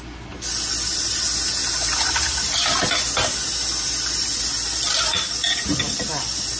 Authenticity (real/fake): real